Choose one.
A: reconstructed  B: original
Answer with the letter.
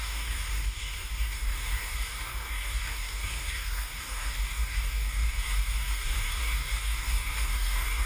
A